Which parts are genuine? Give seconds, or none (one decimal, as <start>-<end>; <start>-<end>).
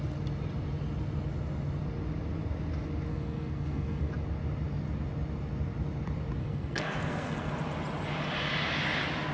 0.0-3.1; 4.1-6.4; 7.5-9.3